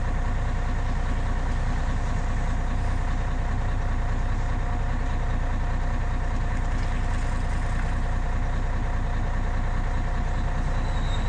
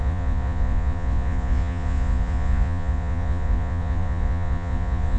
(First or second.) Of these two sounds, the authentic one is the first